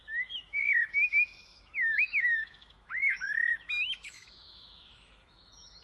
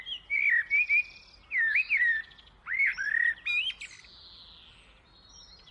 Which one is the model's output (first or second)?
first